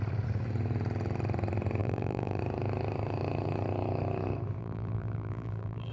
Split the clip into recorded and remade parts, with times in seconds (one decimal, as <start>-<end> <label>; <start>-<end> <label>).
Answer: 0.0-1.8 recorded; 1.8-2.4 remade; 2.4-4.6 recorded; 4.6-5.9 remade